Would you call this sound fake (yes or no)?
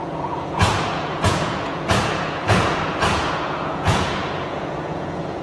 yes